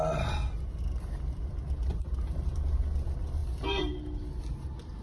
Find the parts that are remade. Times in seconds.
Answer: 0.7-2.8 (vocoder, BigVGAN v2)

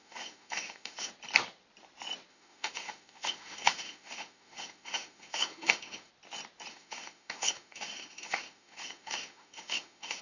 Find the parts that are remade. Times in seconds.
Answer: 0.0-1.1 (autoencoder, DAC-VAE); 2.3-6.1; 6.7-10.2

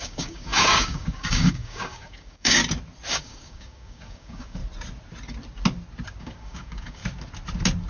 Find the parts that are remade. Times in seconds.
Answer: 0.0-2.6 (codec, DAC); 3.1-4.6; 6.2-7.0

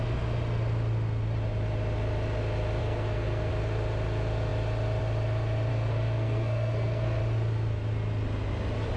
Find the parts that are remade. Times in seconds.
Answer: 2.8-3.5 (codec, SNAC); 5.7-7.2

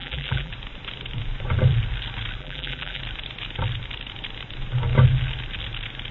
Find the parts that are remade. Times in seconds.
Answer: 0.0-0.5 (vocoder, BigVGAN v2); 2.4-3.0